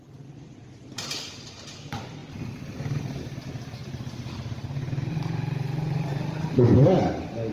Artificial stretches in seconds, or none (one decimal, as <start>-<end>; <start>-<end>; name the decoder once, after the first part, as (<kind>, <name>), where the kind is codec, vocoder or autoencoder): 3.8-7.0 (vocoder, BigVGAN v2)